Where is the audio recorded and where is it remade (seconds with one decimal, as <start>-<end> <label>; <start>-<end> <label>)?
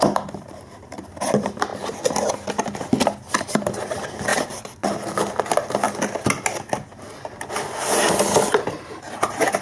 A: 0.0-1.7 remade; 1.7-3.4 recorded; 3.4-4.3 remade; 4.3-8.5 recorded; 8.5-9.6 remade